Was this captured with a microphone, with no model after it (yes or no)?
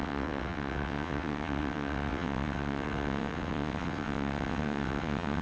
no